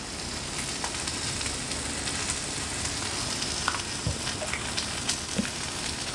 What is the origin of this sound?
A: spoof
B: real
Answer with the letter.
B